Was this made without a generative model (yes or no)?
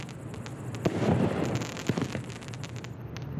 yes